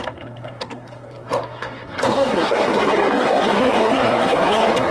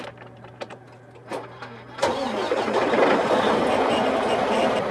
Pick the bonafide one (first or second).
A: second